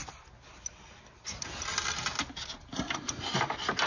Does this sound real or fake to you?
real